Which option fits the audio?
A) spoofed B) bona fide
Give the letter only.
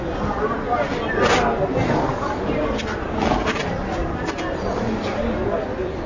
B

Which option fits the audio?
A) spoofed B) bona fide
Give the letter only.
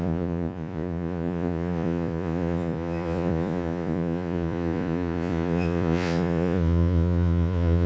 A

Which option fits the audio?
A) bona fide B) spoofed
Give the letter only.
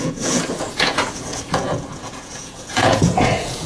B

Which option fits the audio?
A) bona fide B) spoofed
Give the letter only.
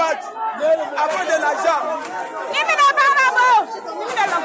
A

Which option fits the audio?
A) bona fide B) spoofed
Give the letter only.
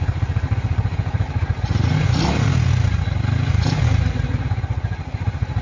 A